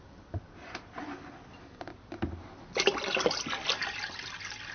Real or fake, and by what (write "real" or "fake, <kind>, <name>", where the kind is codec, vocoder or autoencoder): real